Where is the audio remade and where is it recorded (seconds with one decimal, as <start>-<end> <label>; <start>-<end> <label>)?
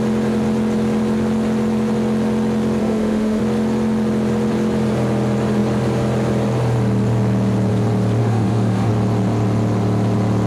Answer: 0.0-2.8 recorded; 2.8-3.4 remade; 3.4-8.2 recorded; 8.2-8.9 remade; 8.9-10.5 recorded